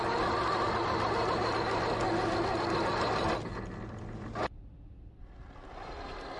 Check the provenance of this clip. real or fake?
real